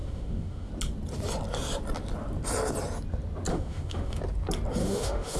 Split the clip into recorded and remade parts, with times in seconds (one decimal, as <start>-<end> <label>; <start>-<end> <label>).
0.0-0.7 remade; 0.7-3.5 recorded; 3.5-4.2 remade; 4.2-4.8 recorded; 4.8-5.4 remade